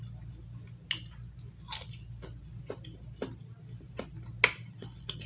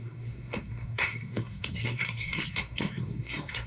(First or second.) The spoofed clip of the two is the second